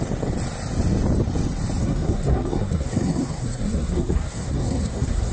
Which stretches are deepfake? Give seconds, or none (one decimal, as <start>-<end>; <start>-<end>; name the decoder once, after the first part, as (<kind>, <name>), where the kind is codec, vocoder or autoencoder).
1.8-5.3 (codec, SNAC)